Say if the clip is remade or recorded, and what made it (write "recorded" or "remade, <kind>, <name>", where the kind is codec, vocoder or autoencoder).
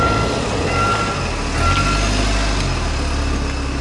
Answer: recorded